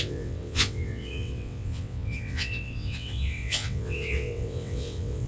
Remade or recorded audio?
remade